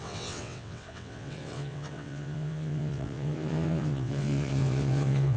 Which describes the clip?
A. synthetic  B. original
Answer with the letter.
A